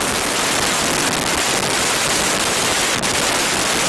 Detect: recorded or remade recorded